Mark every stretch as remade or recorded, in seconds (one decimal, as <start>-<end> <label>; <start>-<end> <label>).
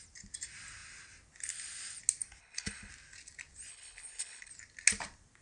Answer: 0.0-2.4 recorded; 2.4-2.9 remade; 2.9-3.7 recorded; 3.7-4.5 remade; 4.5-5.4 recorded